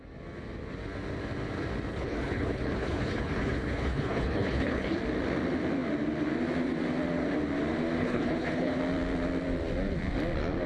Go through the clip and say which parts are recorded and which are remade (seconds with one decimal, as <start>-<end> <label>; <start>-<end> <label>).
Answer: 0.0-1.9 recorded; 1.9-5.0 remade; 5.0-8.0 recorded; 8.0-8.8 remade; 8.8-10.7 recorded